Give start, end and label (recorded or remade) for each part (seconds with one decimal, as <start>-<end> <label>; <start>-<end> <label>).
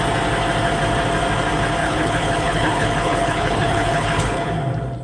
0.0-1.8 recorded; 1.8-4.5 remade; 4.5-5.0 recorded